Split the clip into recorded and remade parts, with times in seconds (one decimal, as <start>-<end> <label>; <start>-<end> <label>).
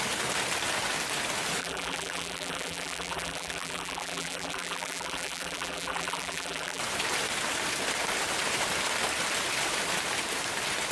0.0-1.6 recorded; 1.6-6.8 remade; 6.8-10.9 recorded